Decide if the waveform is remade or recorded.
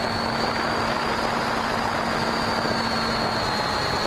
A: recorded